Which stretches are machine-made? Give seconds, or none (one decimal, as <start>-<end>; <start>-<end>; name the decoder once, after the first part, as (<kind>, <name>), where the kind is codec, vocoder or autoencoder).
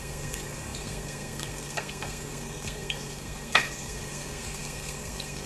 0.0-5.5 (codec, SNAC)